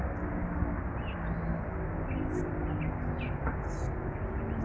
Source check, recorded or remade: recorded